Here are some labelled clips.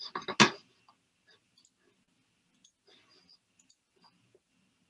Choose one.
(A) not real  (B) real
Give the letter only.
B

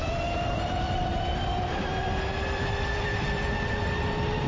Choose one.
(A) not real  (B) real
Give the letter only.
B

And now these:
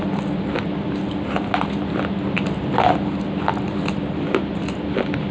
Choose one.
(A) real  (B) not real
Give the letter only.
A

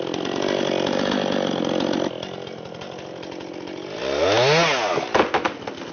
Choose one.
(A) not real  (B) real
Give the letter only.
B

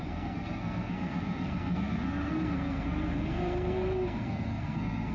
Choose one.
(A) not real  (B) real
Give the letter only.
A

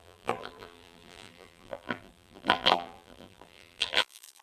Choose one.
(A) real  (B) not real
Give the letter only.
B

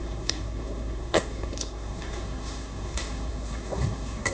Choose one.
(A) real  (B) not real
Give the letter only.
B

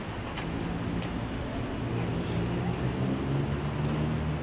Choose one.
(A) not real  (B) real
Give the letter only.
B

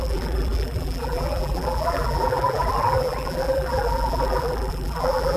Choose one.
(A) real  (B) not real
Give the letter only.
B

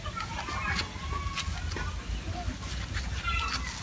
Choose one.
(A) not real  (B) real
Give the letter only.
B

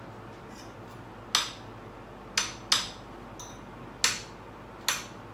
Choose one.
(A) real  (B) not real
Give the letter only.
A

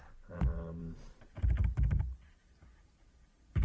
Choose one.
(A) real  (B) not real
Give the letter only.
B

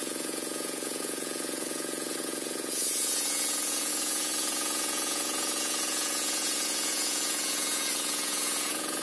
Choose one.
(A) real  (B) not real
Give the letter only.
B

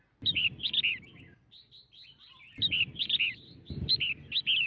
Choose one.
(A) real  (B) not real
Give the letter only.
A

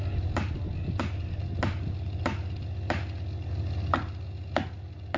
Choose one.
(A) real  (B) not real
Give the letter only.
A